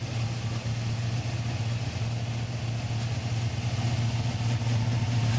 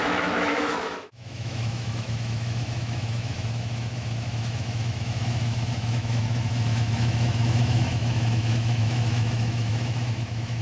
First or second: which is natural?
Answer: first